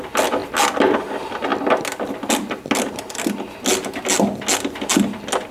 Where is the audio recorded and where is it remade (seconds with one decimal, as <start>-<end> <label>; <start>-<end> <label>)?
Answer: 0.0-5.5 recorded

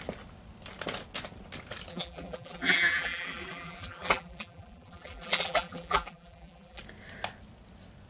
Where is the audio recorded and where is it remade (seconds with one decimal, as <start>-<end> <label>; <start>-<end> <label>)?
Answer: 0.0-1.9 recorded; 1.9-6.8 remade; 6.8-8.1 recorded

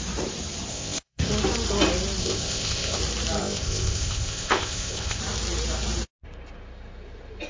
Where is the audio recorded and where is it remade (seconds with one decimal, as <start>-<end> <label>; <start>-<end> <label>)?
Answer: 0.0-0.7 recorded; 0.7-1.3 remade; 1.3-2.2 recorded; 2.2-3.0 remade; 3.0-3.4 recorded; 3.4-5.2 remade; 5.2-7.5 recorded

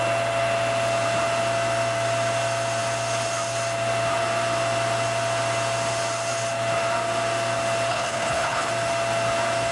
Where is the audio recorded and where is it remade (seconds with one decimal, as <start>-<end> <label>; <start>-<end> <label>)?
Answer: 0.0-7.9 recorded; 7.9-8.7 remade; 8.7-9.7 recorded

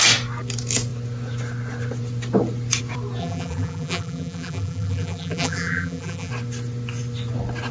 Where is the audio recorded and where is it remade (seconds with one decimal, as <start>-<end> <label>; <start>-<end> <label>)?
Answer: 0.0-3.2 recorded; 3.2-6.3 remade; 6.3-7.7 recorded

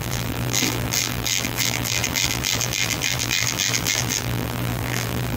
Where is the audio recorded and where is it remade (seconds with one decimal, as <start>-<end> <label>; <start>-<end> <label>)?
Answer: 0.0-5.4 remade